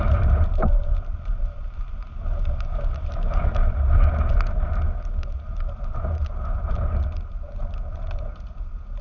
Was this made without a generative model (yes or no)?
yes